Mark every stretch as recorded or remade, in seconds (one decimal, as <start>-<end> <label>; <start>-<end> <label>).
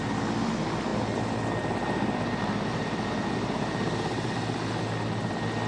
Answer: 0.0-5.7 recorded